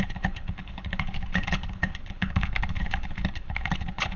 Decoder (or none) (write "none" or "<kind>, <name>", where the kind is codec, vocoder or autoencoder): codec, HILCodec